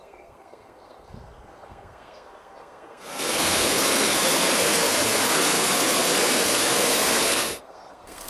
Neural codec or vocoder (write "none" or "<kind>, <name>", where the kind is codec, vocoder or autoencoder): codec, SNAC